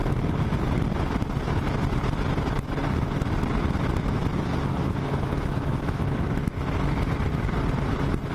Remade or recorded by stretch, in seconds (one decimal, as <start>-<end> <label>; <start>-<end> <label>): 0.0-4.7 recorded; 4.7-6.4 remade; 6.4-8.3 recorded